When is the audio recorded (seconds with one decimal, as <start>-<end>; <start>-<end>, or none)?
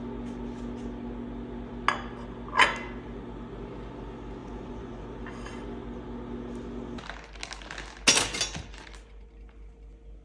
0.0-4.4; 5.1-10.2